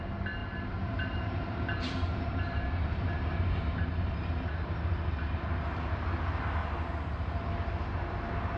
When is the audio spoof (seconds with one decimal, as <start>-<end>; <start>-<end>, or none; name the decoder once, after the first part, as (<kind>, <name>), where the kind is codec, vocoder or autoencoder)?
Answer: 0.4-5.4 (vocoder, BigVGAN v2); 6.6-7.4